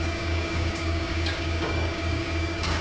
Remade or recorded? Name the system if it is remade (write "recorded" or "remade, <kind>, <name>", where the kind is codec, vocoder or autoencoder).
remade, codec, DAC